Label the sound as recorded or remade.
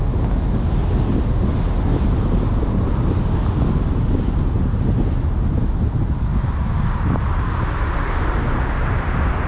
recorded